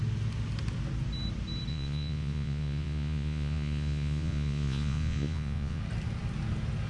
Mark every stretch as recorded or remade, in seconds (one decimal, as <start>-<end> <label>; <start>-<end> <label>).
0.0-1.7 recorded; 1.7-5.8 remade; 5.8-6.9 recorded